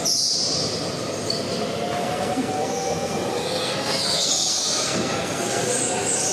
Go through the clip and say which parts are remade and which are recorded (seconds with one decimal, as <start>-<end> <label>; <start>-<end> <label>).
0.0-2.0 recorded; 2.0-5.8 remade; 5.8-6.3 recorded